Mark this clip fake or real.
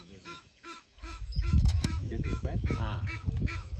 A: fake